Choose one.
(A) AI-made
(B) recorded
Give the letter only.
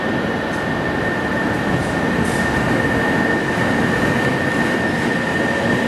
B